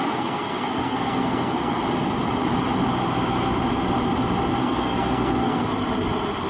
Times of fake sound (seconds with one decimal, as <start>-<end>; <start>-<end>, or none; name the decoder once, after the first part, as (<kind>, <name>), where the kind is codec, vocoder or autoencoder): 0.0-1.8 (codec, SNAC); 4.6-5.7